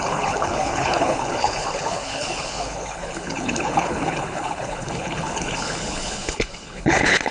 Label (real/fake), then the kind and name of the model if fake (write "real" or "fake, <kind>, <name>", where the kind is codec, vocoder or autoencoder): fake, codec, HILCodec